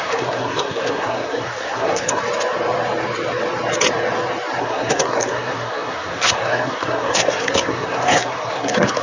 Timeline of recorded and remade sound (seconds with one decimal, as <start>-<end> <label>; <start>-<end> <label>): 0.0-2.2 remade; 2.2-4.6 recorded; 4.6-9.0 remade